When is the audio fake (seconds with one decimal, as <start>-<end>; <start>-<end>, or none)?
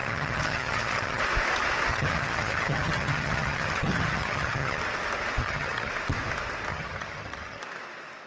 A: 0.0-1.2; 1.9-4.8; 5.4-5.9; 6.7-7.6